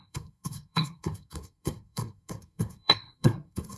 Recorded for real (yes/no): no